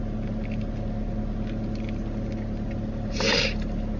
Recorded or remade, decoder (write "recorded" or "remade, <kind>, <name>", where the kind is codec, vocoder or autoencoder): recorded